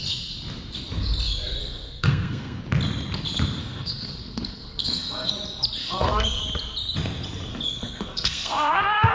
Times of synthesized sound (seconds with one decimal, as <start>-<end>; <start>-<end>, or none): 1.6-2.6; 3.6-5.3; 5.8-6.4; 7.5-9.1